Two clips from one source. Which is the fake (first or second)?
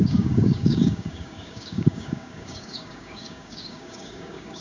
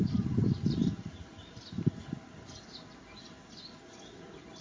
first